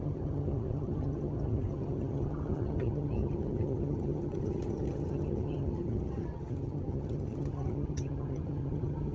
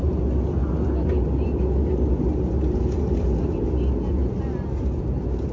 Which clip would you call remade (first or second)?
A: first